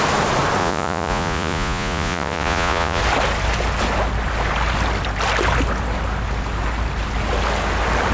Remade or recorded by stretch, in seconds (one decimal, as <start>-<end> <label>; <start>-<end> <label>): 0.0-0.6 recorded; 0.6-3.0 remade; 3.0-8.1 recorded